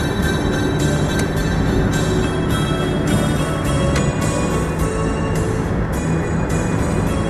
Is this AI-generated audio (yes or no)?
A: no